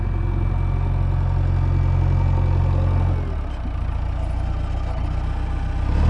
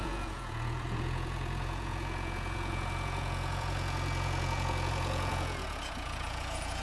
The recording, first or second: first